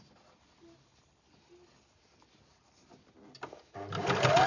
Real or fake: real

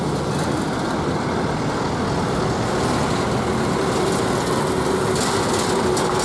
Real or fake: real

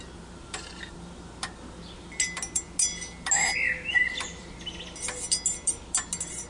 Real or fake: real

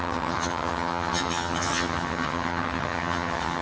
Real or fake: fake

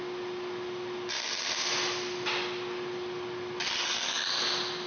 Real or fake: real